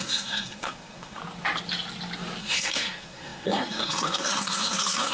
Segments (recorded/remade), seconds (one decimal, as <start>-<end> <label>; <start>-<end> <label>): 0.0-1.2 remade; 1.2-2.4 recorded; 2.4-5.1 remade